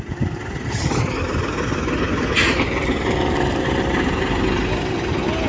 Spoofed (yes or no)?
no